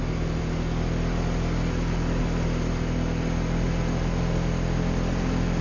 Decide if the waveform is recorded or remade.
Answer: recorded